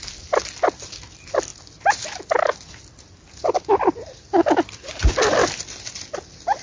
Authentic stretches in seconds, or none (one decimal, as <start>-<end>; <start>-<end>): 0.0-6.6